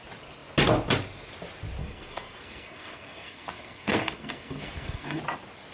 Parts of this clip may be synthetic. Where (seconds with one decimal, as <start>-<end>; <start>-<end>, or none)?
1.8-5.2